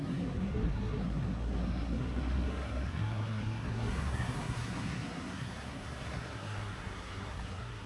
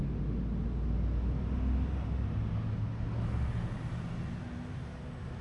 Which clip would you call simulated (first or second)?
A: first